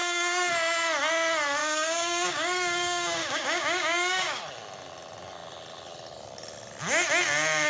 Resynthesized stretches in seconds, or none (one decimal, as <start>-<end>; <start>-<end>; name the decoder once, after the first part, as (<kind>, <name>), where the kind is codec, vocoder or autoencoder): 0.0-0.5 (codec, DAC); 1.6-4.4